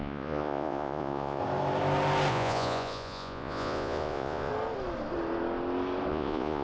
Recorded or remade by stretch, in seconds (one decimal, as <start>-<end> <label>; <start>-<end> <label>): 0.0-1.4 remade; 1.4-2.3 recorded; 2.3-4.5 remade; 4.5-6.1 recorded; 6.1-6.6 remade